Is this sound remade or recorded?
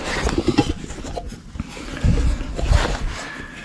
recorded